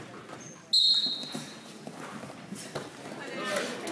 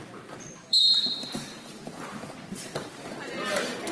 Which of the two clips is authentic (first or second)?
first